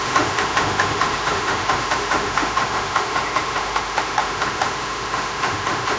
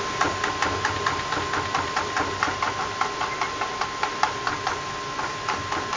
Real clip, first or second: second